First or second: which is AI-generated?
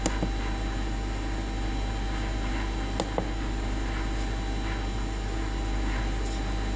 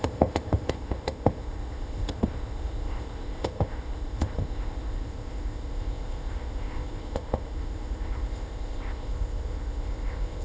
second